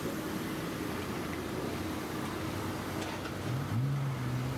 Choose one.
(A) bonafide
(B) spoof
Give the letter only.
A